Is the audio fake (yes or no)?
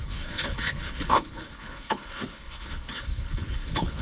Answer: yes